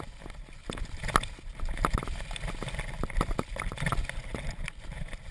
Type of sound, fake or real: real